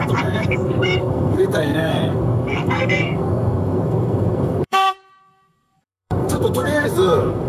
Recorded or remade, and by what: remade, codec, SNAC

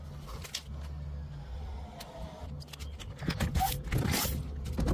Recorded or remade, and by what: recorded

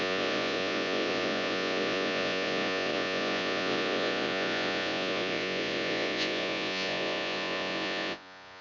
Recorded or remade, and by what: remade, vocoder, Vocos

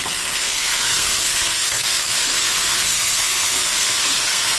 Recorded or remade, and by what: remade, codec, SNAC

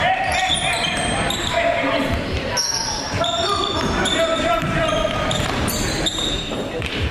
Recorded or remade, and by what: remade, vocoder, BigVGAN v2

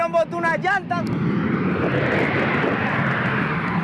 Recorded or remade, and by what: recorded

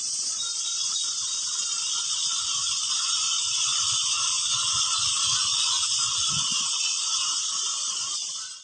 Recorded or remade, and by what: remade, vocoder, Vocos